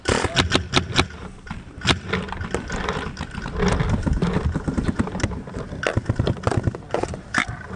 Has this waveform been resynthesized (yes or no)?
no